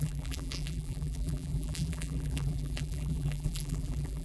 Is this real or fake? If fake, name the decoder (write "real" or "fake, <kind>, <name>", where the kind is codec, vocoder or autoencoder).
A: fake, vocoder, BigVGAN v2